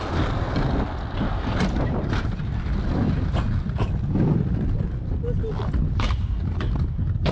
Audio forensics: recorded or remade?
recorded